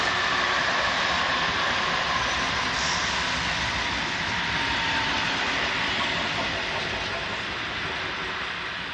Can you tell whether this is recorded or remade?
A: recorded